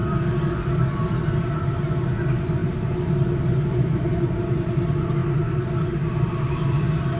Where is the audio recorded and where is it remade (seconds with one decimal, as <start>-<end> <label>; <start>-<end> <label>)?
0.0-7.2 recorded